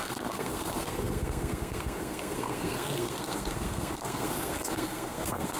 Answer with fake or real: fake